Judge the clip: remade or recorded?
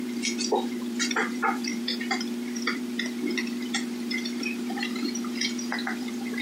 remade